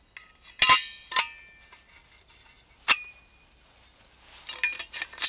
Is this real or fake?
real